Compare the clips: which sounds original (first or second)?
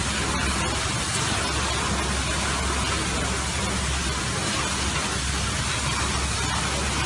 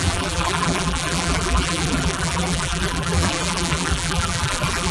first